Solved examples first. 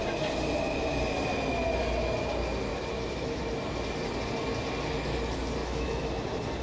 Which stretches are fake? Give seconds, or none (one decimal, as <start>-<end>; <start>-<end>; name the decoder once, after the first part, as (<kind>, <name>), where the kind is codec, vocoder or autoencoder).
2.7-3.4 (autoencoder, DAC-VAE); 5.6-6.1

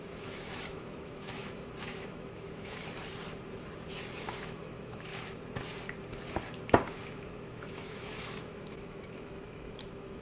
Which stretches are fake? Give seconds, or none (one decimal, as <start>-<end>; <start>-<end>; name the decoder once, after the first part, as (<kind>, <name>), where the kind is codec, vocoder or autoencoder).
0.0-2.8 (autoencoder, DAC-VAE); 4.2-5.1; 7.0-10.2

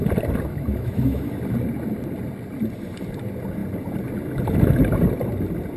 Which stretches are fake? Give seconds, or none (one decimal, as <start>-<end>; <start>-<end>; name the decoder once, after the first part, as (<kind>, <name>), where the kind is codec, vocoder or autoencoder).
0.5-1.3 (autoencoder, DAC-VAE)

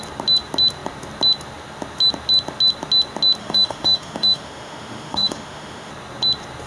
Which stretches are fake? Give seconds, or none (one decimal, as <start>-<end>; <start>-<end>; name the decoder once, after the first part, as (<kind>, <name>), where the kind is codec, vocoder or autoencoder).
3.4-5.9 (autoencoder, DAC-VAE)

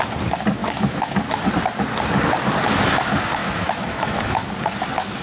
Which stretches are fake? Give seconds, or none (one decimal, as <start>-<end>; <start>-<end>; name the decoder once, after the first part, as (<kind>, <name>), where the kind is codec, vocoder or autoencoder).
0.6-1.3 (autoencoder, DAC-VAE); 3.4-4.5

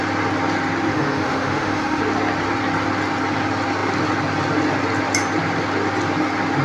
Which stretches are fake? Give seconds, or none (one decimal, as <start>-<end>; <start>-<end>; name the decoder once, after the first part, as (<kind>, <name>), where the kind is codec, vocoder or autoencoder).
0.9-2.0 (autoencoder, DAC-VAE)

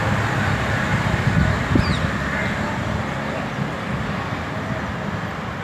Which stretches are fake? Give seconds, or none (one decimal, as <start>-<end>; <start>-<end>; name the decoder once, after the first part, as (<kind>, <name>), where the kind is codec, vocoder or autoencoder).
none